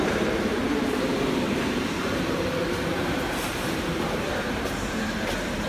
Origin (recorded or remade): remade